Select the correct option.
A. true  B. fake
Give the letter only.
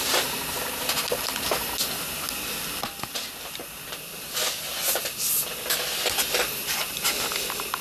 A